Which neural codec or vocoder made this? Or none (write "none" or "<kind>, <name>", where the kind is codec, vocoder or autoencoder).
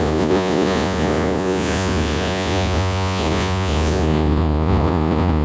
vocoder, Vocos